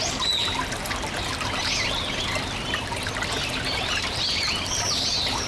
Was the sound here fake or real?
real